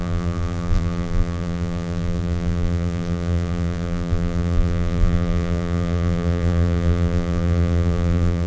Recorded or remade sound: remade